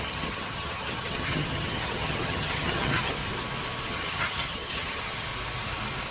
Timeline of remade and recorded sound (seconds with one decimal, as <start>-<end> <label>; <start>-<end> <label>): 0.0-3.2 remade; 3.2-3.9 recorded; 3.9-5.3 remade; 5.3-6.1 recorded